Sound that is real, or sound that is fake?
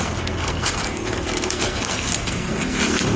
fake